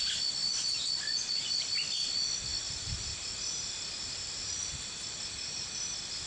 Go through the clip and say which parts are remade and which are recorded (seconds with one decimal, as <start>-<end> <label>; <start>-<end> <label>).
0.0-6.3 recorded